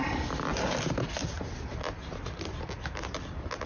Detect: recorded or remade recorded